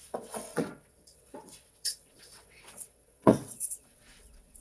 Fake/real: fake